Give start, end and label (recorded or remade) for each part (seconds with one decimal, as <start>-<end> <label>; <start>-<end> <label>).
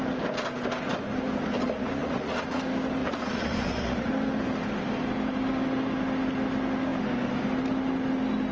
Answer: 0.0-1.6 recorded; 1.6-2.6 remade; 2.6-3.0 recorded; 3.0-4.1 remade; 4.1-8.5 recorded